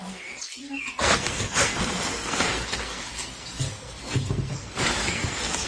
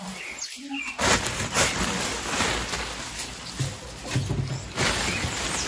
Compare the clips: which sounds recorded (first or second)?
second